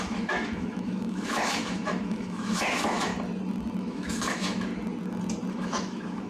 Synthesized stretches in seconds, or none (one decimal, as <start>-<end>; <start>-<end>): 0.0-3.1; 3.8-4.7; 5.5-6.3